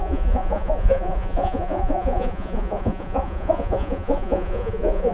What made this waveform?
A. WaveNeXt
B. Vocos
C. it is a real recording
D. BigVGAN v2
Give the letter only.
B